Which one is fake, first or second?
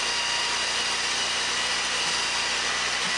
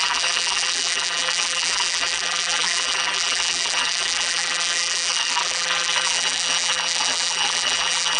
second